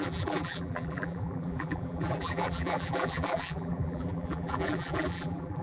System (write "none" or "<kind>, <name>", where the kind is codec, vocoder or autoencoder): vocoder, BigVGAN v2